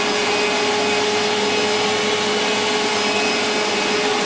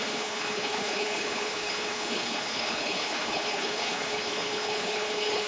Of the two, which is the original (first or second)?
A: first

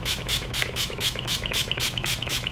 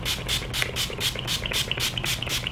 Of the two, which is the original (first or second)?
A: second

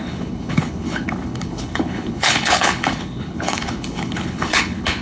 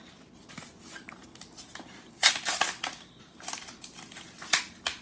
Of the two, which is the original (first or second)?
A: second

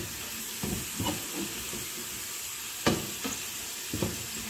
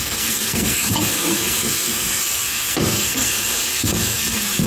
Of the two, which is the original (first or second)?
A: first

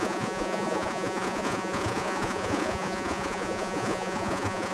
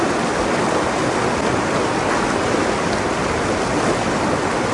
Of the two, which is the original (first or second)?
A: second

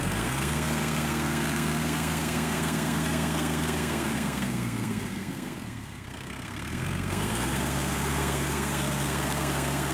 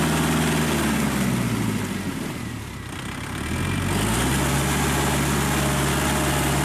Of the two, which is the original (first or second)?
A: second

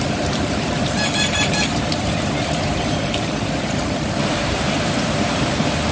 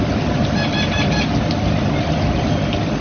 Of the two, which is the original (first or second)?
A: second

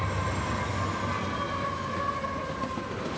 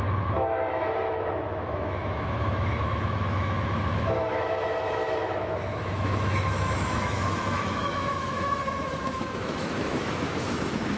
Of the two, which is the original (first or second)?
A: first